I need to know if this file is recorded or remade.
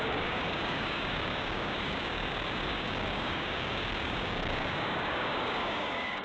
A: remade